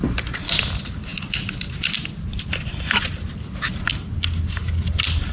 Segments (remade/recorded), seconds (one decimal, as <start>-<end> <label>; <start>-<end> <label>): 0.0-5.3 recorded

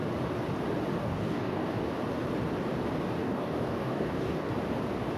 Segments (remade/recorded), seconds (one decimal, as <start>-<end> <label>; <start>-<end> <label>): 0.0-1.0 recorded; 1.0-1.9 remade; 1.9-3.2 recorded; 3.2-4.5 remade; 4.5-5.2 recorded

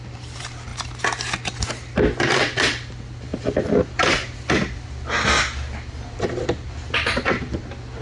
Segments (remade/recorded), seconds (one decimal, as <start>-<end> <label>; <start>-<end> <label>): 0.0-8.0 recorded

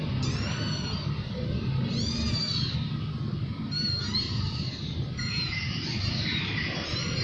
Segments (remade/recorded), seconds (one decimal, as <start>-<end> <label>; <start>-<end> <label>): 0.0-3.3 recorded; 3.3-7.2 remade

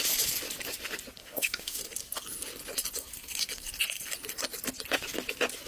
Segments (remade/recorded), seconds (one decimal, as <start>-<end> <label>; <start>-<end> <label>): 0.0-1.2 recorded; 1.2-1.8 remade; 1.8-5.7 recorded

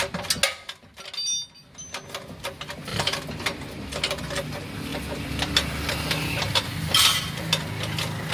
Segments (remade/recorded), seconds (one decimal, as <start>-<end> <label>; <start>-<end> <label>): 0.0-2.9 recorded; 2.9-4.2 remade; 4.2-4.9 recorded; 4.9-7.5 remade; 7.5-8.3 recorded

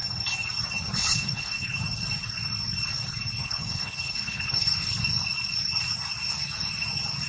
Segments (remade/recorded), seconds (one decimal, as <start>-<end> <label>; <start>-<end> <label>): 0.0-1.0 recorded; 1.0-1.8 remade; 1.8-3.4 recorded; 3.4-4.9 remade; 4.9-7.3 recorded